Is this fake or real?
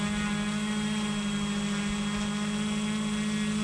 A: real